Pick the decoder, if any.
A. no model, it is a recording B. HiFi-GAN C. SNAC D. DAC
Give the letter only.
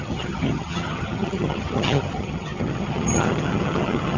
B